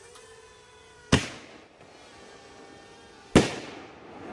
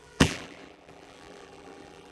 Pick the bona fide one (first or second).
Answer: first